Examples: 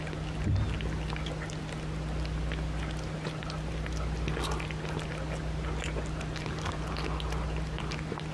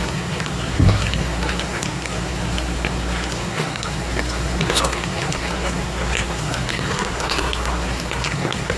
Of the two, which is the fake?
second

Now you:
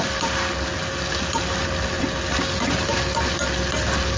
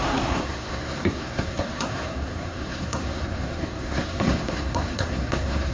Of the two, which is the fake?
second